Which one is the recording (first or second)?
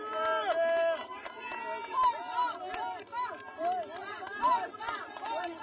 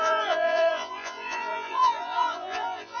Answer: first